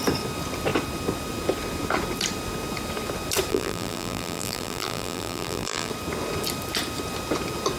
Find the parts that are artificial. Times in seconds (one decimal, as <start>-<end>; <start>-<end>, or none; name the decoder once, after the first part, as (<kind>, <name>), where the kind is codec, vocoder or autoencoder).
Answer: 3.5-5.9 (vocoder, BigVGAN v2)